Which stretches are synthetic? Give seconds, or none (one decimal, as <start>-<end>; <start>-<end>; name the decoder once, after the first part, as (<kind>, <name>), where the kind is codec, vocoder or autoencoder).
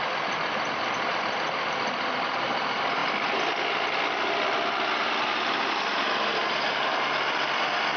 none